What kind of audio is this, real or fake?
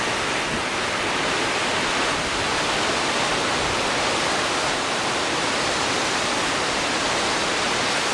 real